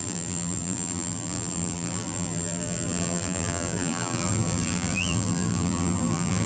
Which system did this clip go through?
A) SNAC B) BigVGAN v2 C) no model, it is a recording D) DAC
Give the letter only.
B